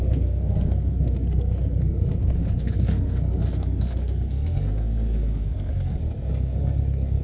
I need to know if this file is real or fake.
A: fake